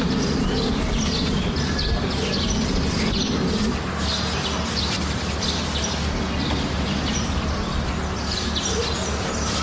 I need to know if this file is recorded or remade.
recorded